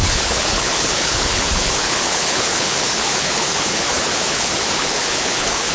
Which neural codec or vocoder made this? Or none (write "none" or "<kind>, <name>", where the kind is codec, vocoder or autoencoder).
codec, HILCodec